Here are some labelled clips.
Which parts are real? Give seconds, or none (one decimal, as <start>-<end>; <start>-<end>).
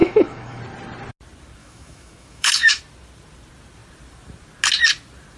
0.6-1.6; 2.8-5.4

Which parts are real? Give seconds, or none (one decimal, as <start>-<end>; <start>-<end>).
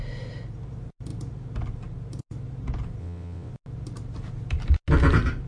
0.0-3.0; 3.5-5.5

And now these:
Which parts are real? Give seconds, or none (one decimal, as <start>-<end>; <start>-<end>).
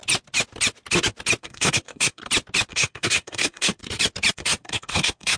0.0-1.4; 2.2-2.7; 3.8-4.3